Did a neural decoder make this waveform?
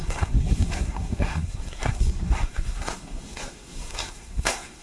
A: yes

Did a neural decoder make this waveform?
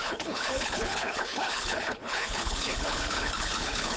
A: yes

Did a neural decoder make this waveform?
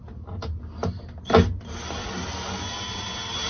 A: no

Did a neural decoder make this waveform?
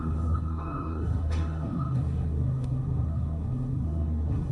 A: yes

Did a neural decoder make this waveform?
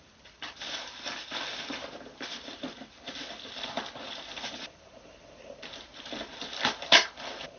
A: yes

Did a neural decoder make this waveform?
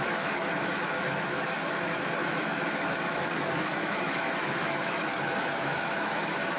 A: yes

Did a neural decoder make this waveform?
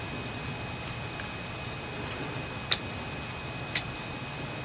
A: no